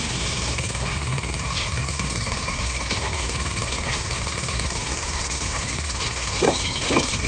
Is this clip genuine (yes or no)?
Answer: no